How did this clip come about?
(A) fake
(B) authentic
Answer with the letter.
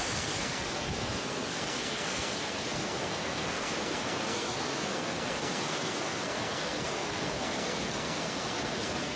A